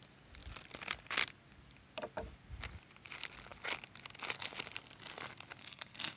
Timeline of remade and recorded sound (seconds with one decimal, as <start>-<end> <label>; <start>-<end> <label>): 0.0-5.6 recorded; 5.6-6.2 remade